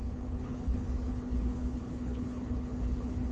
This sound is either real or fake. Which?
fake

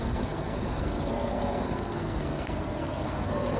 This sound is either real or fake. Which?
fake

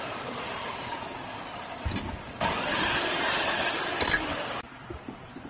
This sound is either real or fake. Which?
real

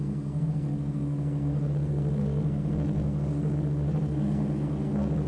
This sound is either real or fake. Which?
fake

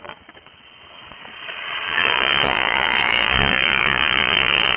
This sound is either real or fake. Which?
fake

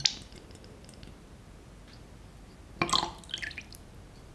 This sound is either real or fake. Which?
real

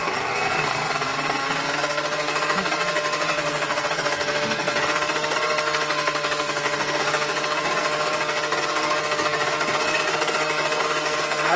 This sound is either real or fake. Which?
fake